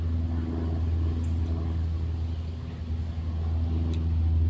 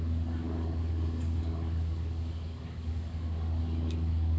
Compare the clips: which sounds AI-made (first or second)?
second